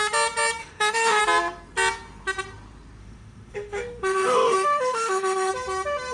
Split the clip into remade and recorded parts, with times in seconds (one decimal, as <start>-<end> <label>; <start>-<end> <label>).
0.0-0.6 recorded; 0.6-1.2 remade; 1.2-3.0 recorded; 3.0-5.5 remade; 5.5-6.1 recorded